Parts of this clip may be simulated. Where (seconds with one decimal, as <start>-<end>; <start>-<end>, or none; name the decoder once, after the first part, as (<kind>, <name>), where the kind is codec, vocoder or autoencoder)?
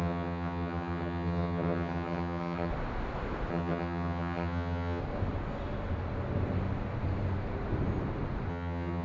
0.0-2.7 (vocoder, HiFi-GAN); 3.5-5.0; 8.5-9.0